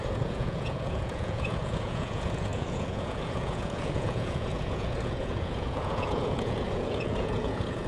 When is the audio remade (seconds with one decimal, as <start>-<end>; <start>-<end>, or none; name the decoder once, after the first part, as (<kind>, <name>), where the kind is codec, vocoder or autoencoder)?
0.0-7.9 (vocoder, Vocos)